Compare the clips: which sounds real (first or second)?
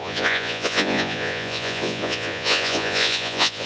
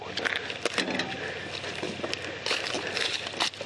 second